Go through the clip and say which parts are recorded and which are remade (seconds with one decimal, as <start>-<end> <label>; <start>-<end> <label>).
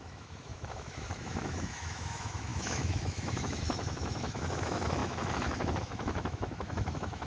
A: 0.0-7.3 remade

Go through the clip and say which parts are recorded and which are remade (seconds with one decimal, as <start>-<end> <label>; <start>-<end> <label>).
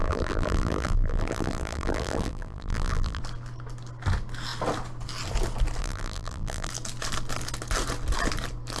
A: 0.0-3.2 remade; 3.2-5.8 recorded; 5.8-6.7 remade; 6.7-8.8 recorded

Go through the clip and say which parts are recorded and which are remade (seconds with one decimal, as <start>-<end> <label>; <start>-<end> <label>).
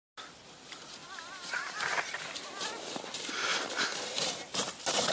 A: 0.0-1.0 recorded; 1.0-2.1 remade; 2.1-5.1 recorded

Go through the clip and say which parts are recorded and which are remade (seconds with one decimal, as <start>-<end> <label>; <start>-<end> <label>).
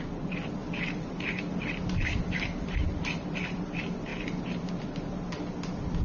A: 0.0-6.0 recorded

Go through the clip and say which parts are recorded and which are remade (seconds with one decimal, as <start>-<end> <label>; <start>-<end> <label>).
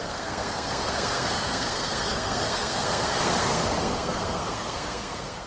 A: 0.0-5.5 remade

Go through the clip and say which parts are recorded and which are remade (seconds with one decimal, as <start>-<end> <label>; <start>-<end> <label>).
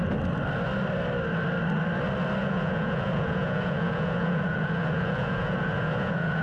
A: 0.0-2.4 recorded; 2.4-6.4 remade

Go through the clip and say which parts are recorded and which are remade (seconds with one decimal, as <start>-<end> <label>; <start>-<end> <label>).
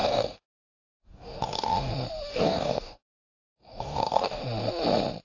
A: 0.0-1.9 remade; 1.9-2.3 recorded; 2.3-4.4 remade; 4.4-5.2 recorded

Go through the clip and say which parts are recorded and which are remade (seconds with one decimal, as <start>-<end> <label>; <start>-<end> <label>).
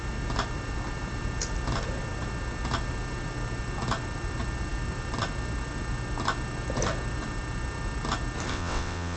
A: 0.0-8.5 recorded; 8.5-9.2 remade